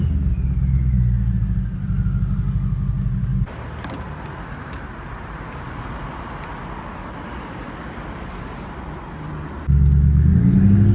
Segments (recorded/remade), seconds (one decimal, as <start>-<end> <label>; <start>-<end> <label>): 0.0-10.9 recorded

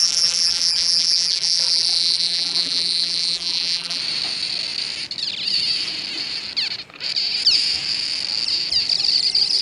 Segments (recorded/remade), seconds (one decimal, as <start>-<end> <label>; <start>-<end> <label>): 0.0-4.0 remade; 4.0-9.6 recorded

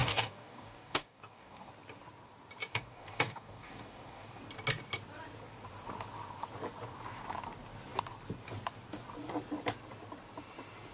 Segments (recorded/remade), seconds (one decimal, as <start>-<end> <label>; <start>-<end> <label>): 0.0-1.7 remade; 1.7-2.7 recorded; 2.7-4.4 remade; 4.4-10.9 recorded

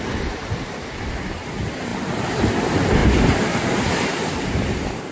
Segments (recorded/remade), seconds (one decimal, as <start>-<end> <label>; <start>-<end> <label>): 0.0-5.1 recorded

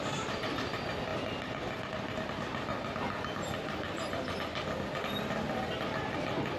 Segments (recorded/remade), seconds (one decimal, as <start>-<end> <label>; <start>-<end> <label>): 0.0-6.6 recorded

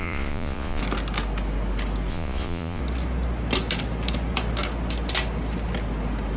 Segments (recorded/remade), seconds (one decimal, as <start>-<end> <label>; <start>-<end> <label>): 0.0-0.8 remade; 0.8-2.1 recorded; 2.1-2.8 remade; 2.8-6.4 recorded

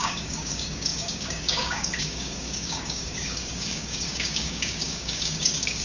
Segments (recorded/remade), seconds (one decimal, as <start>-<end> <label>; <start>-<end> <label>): 0.0-5.8 remade